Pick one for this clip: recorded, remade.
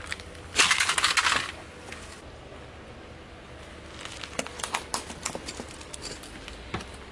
recorded